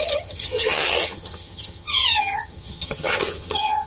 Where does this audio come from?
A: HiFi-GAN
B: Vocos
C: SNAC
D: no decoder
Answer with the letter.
A